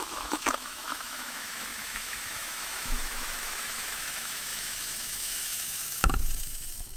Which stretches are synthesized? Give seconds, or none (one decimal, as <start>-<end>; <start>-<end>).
0.0-7.0